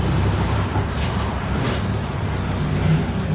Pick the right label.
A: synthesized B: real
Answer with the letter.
A